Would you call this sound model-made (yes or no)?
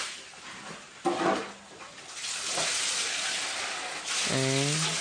no